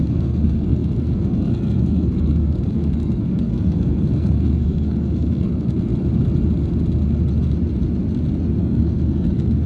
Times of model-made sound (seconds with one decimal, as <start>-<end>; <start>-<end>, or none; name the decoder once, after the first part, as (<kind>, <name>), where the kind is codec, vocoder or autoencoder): 0.0-5.9 (codec, SNAC); 8.6-9.7